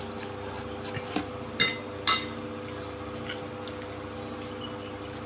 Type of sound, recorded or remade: recorded